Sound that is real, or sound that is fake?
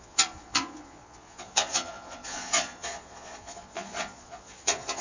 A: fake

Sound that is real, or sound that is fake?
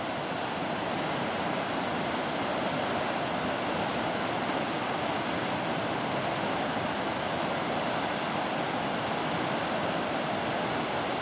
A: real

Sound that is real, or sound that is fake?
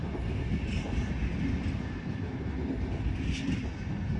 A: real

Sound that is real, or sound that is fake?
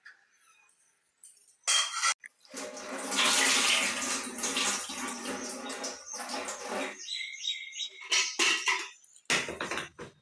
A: real